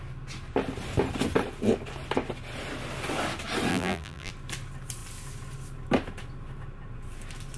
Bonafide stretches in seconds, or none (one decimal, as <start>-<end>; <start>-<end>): 0.0-3.7; 4.3-7.6